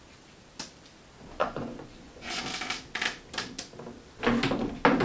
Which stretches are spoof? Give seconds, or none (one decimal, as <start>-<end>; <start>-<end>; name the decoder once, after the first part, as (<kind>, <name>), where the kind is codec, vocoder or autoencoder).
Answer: 1.4-2.4 (vocoder, Vocos)